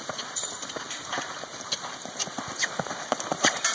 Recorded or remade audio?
remade